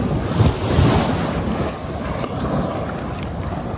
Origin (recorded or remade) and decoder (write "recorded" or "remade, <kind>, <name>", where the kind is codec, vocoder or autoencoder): recorded